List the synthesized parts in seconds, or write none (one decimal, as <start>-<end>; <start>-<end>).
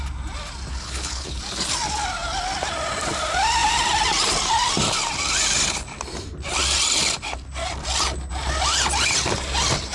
0.7-1.4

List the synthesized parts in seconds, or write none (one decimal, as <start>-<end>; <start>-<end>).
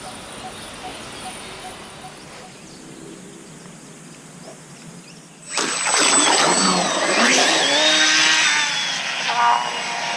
none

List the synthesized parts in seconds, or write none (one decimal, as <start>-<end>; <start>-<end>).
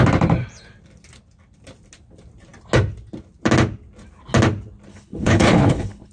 4.9-6.1